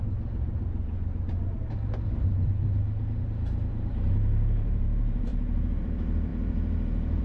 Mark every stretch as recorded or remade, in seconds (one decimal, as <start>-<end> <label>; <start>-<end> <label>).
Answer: 0.0-1.6 remade; 1.6-3.2 recorded; 3.2-7.2 remade